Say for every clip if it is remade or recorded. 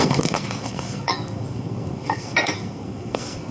remade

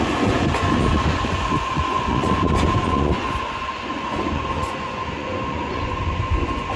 remade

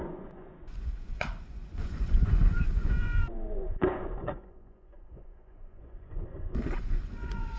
remade